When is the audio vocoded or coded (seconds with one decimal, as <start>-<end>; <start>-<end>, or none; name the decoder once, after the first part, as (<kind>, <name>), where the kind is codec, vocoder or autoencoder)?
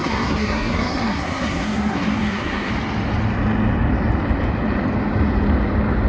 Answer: 0.0-2.7 (codec, SNAC)